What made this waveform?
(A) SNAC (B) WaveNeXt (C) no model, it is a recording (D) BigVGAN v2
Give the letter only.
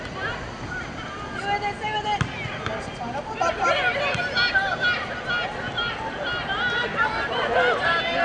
C